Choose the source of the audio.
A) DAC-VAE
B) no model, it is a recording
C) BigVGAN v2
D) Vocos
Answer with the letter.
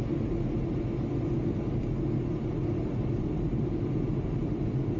B